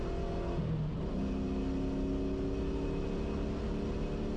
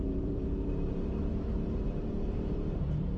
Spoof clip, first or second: second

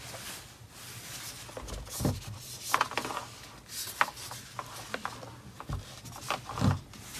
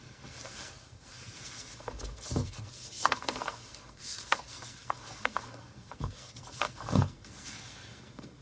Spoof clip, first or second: second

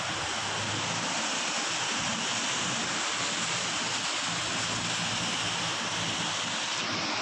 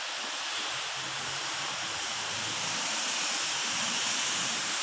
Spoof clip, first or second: second